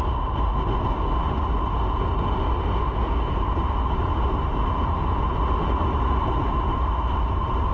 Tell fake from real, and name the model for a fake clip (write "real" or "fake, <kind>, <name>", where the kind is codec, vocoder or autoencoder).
real